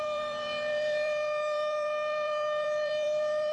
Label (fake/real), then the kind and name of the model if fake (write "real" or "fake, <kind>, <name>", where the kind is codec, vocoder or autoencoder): fake, vocoder, BigVGAN v2